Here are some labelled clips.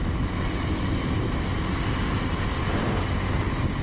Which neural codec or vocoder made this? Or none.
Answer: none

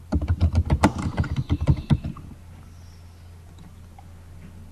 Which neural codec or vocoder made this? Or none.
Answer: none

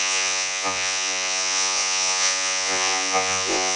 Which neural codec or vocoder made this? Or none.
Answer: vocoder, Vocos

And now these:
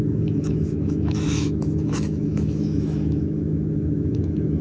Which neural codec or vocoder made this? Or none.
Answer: autoencoder, DAC-VAE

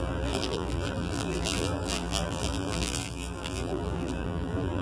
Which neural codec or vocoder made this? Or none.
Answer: vocoder, BigVGAN v2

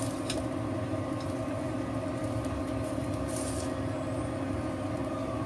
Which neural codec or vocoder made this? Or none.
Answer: none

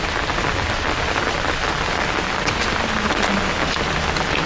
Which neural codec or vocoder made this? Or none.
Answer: none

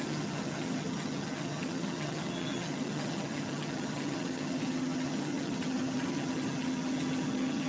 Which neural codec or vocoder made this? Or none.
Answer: vocoder, HiFi-GAN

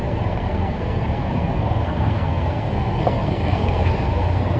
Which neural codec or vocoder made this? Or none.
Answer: codec, SNAC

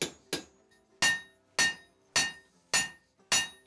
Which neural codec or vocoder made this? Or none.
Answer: none